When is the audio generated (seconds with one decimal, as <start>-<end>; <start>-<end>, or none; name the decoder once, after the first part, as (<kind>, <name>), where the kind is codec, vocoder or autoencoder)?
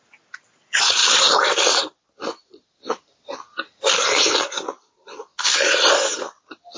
1.0-1.8 (vocoder, BigVGAN v2); 2.3-3.1; 3.5-5.0